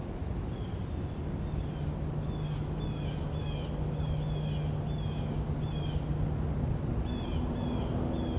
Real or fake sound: real